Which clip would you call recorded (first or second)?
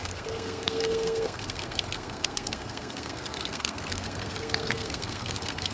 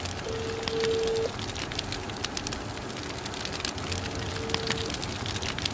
second